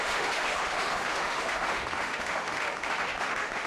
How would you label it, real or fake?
fake